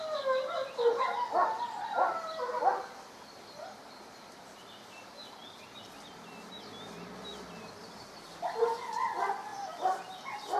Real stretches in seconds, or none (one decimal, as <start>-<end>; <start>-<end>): 0.0-10.6